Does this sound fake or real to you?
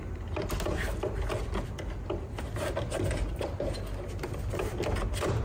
real